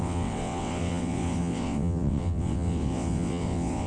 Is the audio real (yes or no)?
no